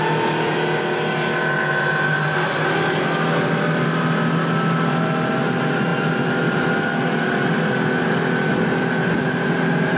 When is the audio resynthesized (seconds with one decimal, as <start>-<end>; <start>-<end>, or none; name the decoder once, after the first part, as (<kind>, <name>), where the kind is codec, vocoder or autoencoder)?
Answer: none